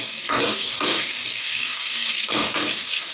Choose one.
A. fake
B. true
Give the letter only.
A